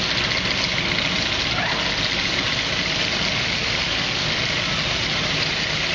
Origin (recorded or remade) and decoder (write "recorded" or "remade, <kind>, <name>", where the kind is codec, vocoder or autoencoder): recorded